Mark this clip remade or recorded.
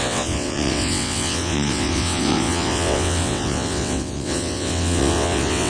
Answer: remade